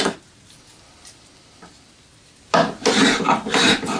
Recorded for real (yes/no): yes